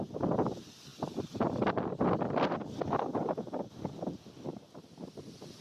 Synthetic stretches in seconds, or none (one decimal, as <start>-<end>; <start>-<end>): none